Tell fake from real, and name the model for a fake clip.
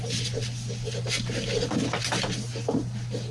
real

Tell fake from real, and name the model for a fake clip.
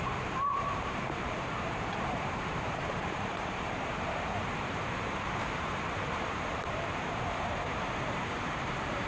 fake, vocoder, BigVGAN v2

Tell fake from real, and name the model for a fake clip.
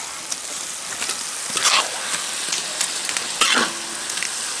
real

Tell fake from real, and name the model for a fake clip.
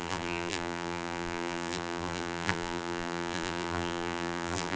fake, vocoder, BigVGAN v2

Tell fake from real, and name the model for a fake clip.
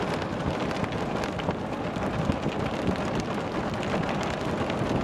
real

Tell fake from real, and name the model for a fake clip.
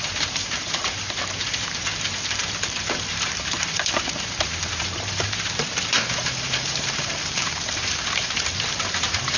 fake, vocoder, BigVGAN v2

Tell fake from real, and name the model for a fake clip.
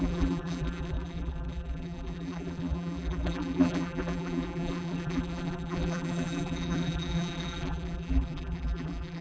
fake, vocoder, BigVGAN v2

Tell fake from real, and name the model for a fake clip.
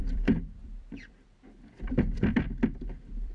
fake, vocoder, BigVGAN v2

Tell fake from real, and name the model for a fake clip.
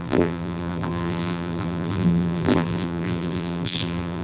fake, vocoder, BigVGAN v2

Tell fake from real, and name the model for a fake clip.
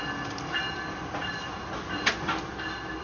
real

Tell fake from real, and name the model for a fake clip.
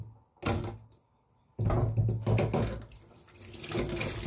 real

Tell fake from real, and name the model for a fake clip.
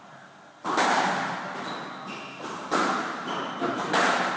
real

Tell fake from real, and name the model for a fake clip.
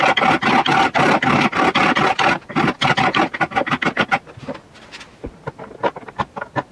real